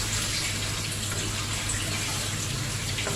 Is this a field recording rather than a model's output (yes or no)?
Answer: yes